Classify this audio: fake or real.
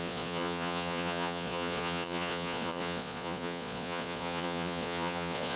fake